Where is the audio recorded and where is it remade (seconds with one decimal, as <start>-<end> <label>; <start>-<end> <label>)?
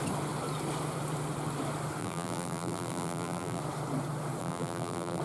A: 0.0-2.0 recorded; 2.0-3.6 remade; 3.6-4.4 recorded; 4.4-5.2 remade